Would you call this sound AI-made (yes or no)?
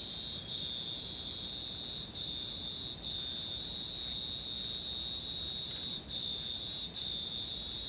no